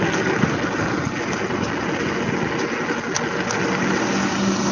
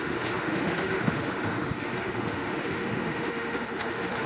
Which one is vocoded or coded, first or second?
second